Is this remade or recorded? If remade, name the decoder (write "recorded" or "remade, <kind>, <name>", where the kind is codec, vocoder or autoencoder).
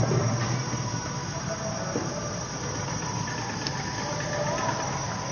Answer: recorded